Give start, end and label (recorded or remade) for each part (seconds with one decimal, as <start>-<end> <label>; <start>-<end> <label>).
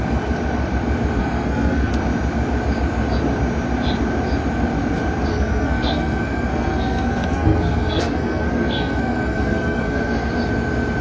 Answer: 0.0-1.2 recorded; 1.2-1.9 remade; 1.9-5.3 recorded; 5.3-10.3 remade; 10.3-11.0 recorded